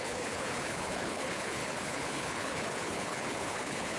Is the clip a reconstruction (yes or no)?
yes